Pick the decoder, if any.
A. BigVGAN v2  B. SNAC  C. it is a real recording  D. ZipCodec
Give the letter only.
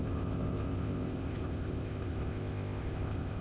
D